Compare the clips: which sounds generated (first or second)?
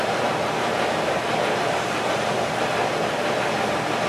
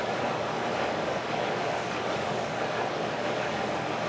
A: second